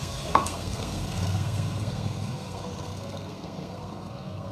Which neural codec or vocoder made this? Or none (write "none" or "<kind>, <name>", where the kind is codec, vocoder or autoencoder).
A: codec, SNAC